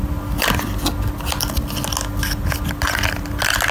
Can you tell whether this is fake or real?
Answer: real